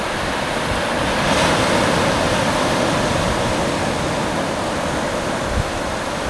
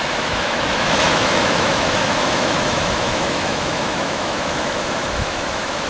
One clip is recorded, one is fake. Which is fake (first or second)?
second